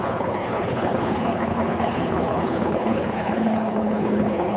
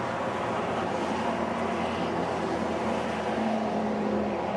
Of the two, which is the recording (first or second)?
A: second